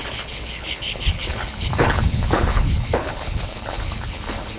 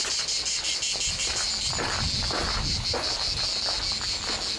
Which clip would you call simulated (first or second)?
first